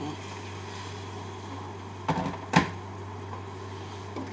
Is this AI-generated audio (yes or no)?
no